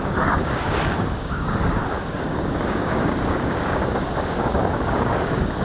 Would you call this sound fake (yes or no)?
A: yes